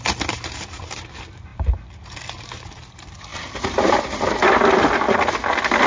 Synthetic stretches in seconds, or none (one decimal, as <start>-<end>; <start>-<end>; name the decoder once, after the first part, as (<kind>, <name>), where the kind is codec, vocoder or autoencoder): none